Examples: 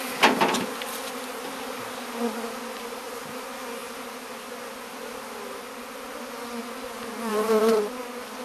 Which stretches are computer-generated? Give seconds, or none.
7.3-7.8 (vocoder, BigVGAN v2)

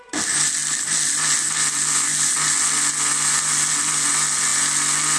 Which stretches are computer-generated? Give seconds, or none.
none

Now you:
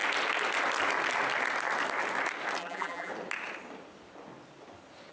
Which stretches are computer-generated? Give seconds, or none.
2.6-3.1 (vocoder, BigVGAN v2)

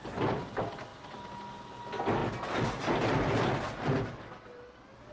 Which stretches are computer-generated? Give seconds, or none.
0.9-1.8 (vocoder, BigVGAN v2)